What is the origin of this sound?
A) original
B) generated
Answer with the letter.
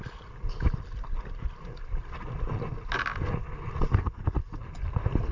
A